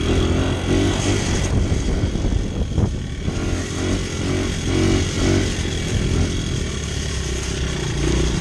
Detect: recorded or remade recorded